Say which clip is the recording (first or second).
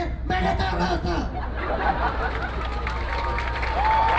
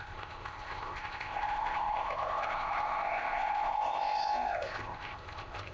first